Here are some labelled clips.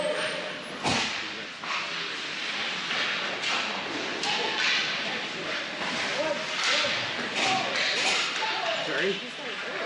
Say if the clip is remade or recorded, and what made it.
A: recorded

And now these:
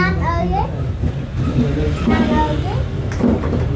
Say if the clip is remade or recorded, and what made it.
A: recorded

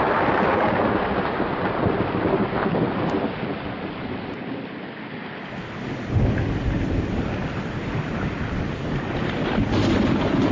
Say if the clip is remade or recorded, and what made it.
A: recorded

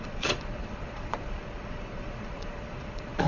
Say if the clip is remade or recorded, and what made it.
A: remade, vocoder, Vocos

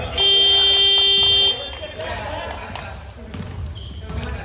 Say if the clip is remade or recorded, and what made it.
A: recorded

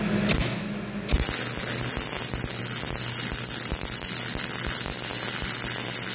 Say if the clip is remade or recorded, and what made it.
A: recorded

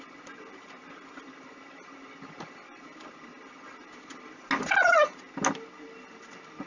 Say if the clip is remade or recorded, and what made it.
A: recorded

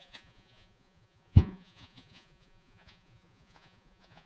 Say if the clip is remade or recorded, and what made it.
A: remade, vocoder, Vocos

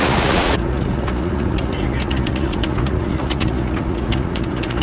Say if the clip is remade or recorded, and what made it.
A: remade, vocoder, Vocos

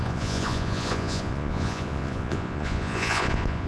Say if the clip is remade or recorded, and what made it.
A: remade, vocoder, Vocos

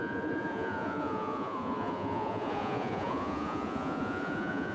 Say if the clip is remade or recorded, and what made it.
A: remade, vocoder, Vocos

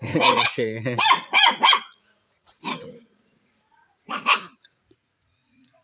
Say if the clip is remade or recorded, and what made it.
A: remade, vocoder, Vocos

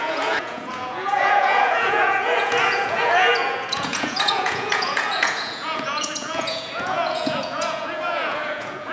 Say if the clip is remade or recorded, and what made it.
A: remade, vocoder, Vocos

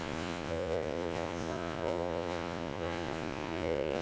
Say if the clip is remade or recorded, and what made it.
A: remade, vocoder, Vocos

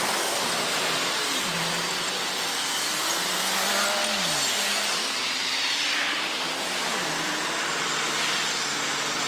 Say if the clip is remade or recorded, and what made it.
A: recorded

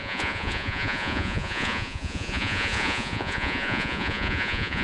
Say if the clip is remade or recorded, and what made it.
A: remade, vocoder, Vocos